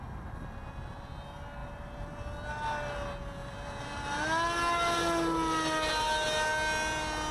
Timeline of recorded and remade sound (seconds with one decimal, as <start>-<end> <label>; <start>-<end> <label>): 0.0-3.4 recorded; 3.4-4.2 remade; 4.2-7.3 recorded